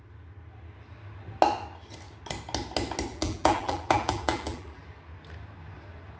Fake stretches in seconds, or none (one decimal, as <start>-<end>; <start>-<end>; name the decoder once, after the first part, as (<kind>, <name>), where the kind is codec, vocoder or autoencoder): 3.1-4.8 (vocoder, BigVGAN v2)